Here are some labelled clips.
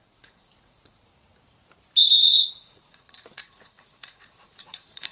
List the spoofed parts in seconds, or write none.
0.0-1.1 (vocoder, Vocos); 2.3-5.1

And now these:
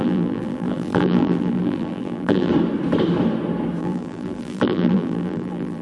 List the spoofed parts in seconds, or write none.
0.0-2.5 (vocoder, BigVGAN v2); 3.8-5.8

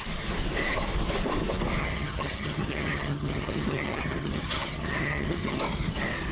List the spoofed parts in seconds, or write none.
1.8-5.6 (vocoder, HiFi-GAN)

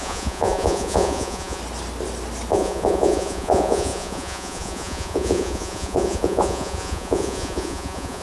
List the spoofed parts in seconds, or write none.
0.0-1.6 (vocoder, Vocos); 2.5-8.2

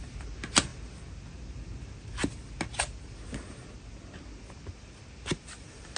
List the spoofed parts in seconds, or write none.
none

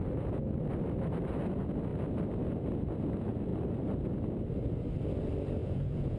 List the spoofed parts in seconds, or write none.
5.6-6.2 (vocoder, Vocos)

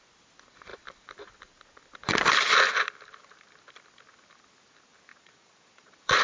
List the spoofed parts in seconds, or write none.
5.1-6.2 (vocoder, Vocos)

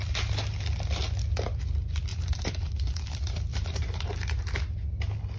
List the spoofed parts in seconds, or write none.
2.1-2.9 (vocoder, BigVGAN v2); 3.5-4.4